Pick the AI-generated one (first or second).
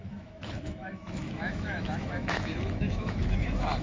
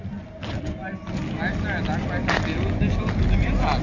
first